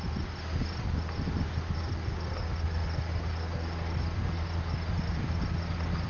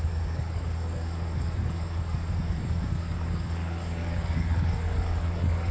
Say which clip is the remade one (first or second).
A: second